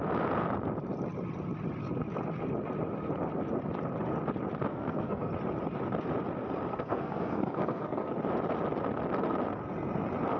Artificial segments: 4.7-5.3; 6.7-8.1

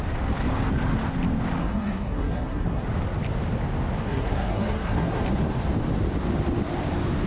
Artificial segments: 1.6-2.8; 4.0-5.2

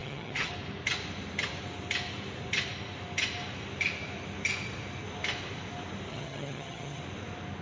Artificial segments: 0.0-0.5; 6.1-7.0

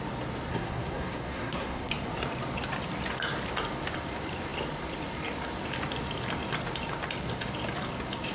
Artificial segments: 0.5-1.9

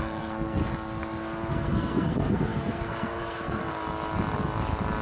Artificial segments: 0.0-0.6; 1.5-3.6